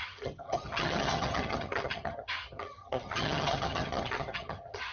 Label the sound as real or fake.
fake